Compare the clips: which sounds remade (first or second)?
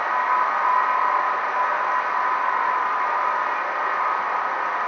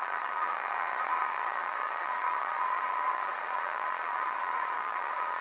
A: second